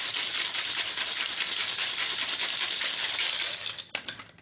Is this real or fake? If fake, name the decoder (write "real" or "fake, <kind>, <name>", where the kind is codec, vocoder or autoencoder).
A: real